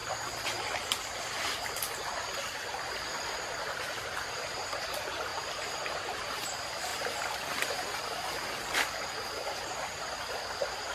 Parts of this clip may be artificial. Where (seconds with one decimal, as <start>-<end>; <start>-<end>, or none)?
3.7-5.3; 5.9-6.9